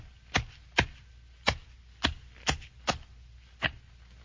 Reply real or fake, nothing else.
real